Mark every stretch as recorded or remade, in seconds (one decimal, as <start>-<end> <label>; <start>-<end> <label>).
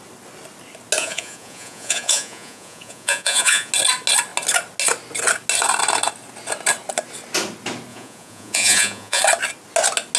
0.0-1.0 recorded; 1.0-3.7 remade; 3.7-7.9 recorded; 7.9-9.2 remade; 9.2-10.2 recorded